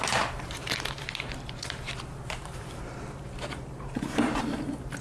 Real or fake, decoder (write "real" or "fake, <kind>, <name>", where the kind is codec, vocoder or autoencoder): fake, vocoder, BigVGAN v2